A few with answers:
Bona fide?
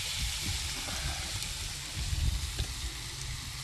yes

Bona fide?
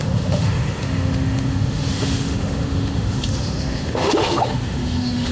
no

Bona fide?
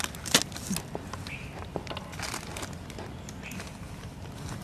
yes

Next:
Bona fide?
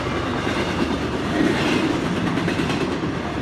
yes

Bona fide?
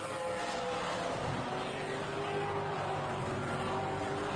yes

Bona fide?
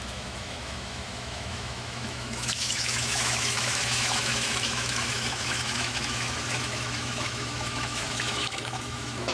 no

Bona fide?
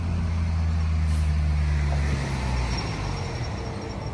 yes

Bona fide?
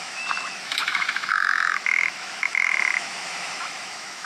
no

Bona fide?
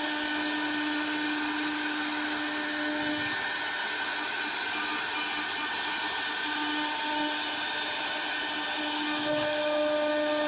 yes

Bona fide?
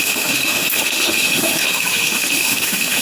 no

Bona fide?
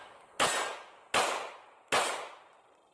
yes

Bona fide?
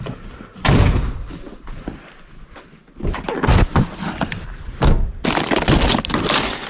yes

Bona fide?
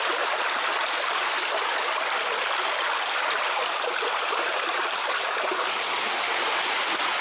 yes